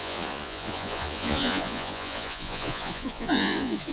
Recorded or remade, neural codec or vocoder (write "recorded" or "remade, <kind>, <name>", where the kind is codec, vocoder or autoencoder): remade, vocoder, Vocos